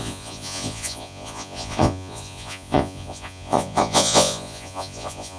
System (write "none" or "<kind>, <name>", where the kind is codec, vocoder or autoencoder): vocoder, Vocos